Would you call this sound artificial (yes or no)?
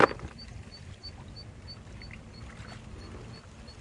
no